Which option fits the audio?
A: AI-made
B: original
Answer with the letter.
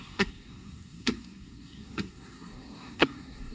A